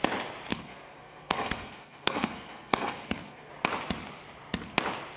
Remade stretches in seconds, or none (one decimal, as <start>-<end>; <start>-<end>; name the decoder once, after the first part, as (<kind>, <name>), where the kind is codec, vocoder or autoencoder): 0.5-3.5 (codec, SNAC)